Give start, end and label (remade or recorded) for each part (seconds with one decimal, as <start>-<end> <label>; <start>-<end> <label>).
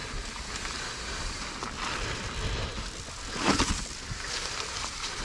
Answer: 0.0-5.2 recorded